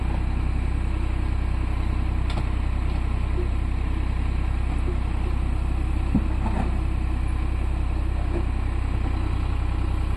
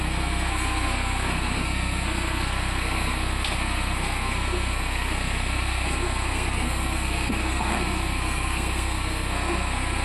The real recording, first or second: first